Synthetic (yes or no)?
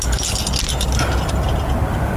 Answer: no